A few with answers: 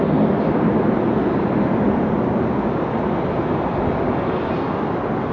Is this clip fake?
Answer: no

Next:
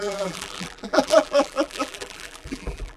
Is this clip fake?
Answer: yes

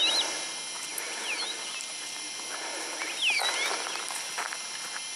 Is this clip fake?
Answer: no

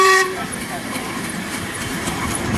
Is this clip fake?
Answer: yes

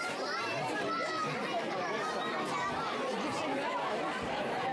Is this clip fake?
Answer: yes